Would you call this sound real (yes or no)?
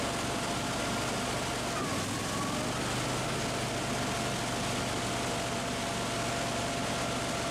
yes